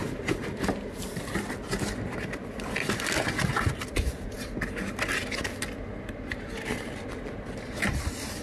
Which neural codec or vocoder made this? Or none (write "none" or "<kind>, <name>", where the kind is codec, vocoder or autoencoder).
none